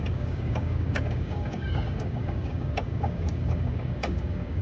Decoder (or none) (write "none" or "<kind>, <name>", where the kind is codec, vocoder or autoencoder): codec, DAC